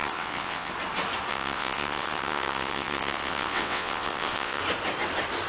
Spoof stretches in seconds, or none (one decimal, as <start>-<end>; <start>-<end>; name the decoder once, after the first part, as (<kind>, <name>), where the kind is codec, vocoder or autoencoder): 0.0-0.7 (vocoder, WaveNeXt); 1.3-4.6